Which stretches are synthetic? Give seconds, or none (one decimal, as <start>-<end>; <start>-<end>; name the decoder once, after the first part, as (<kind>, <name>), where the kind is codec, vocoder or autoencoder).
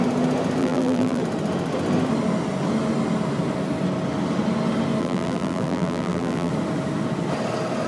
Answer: 0.6-1.2 (vocoder, BigVGAN v2); 5.0-6.5